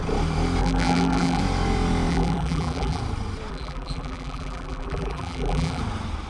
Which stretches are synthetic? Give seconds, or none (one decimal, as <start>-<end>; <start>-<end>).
0.6-1.4; 2.1-3.0; 3.5-5.8